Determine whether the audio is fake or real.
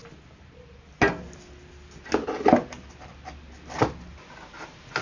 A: real